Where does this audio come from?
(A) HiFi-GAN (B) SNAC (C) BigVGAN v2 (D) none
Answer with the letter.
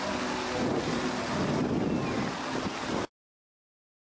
D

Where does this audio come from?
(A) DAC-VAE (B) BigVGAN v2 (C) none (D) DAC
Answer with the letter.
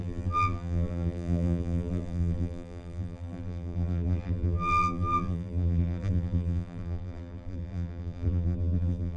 B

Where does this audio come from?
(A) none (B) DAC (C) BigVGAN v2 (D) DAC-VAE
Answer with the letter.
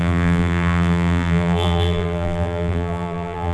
C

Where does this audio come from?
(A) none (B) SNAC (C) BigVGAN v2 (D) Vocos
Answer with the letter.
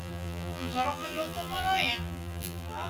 C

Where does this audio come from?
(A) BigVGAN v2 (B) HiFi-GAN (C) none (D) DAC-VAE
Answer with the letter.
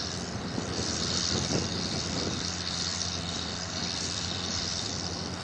A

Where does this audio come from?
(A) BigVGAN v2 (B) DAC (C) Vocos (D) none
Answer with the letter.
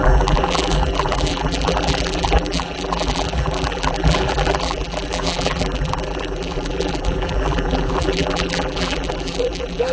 A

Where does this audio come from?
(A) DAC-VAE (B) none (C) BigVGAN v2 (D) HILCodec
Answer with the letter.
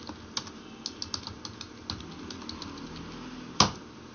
B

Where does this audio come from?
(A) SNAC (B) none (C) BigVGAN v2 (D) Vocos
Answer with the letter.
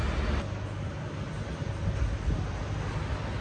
B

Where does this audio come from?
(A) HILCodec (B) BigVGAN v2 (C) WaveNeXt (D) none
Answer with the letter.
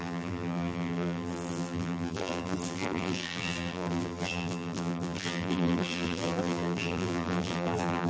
B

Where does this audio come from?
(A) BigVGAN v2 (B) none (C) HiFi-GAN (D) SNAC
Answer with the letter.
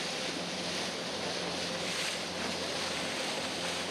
A